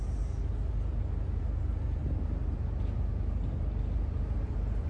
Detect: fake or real real